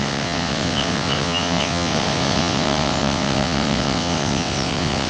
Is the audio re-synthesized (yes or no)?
yes